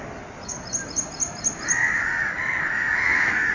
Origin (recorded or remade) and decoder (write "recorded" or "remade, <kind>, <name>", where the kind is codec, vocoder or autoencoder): recorded